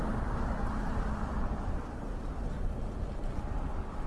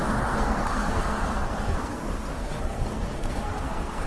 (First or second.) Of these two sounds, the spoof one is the second